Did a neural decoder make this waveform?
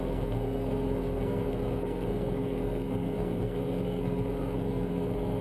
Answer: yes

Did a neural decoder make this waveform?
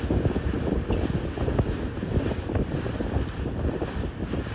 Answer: no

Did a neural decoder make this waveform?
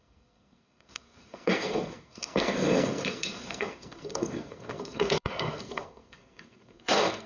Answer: yes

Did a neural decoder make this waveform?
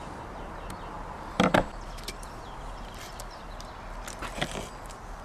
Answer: no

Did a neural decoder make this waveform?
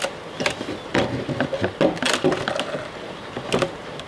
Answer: no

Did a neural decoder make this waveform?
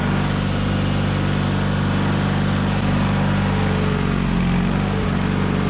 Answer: no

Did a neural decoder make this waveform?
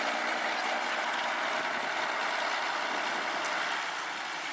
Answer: no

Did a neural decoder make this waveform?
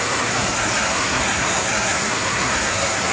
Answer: yes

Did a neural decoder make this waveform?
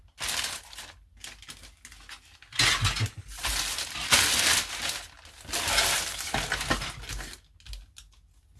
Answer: no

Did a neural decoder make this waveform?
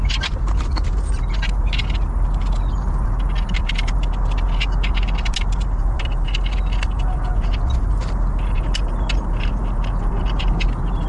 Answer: no